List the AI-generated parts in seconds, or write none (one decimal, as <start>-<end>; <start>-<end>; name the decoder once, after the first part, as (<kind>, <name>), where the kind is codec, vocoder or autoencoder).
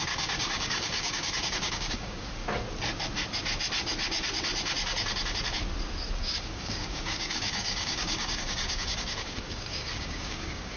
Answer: 0.0-2.4 (codec, DAC); 6.2-10.8